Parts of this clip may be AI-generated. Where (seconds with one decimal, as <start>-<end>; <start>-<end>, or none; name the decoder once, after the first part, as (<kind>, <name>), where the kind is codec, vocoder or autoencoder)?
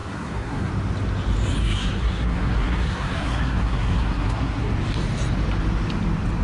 0.0-0.7 (codec, SNAC); 1.6-4.7